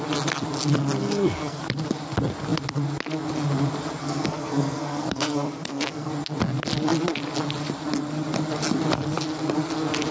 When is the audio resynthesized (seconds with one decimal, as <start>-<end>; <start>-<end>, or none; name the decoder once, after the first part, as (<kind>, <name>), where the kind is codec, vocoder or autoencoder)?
1.0-1.6 (codec, SNAC); 4.0-6.1